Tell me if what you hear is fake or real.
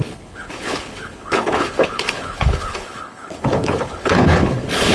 fake